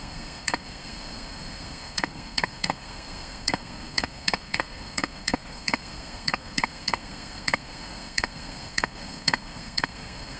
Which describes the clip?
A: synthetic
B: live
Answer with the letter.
A